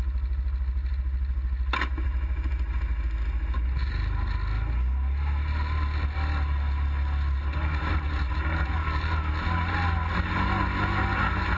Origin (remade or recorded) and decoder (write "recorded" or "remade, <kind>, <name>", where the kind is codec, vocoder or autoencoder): recorded